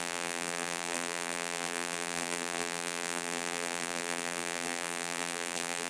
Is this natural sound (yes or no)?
no